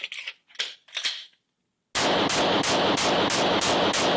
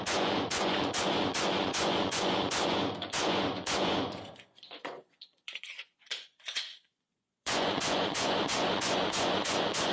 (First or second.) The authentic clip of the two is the first